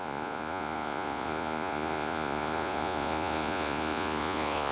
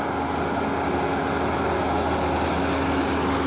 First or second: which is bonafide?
second